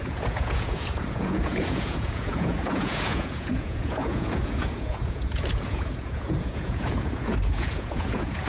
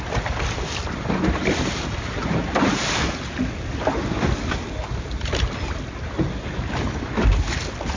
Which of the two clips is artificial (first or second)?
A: first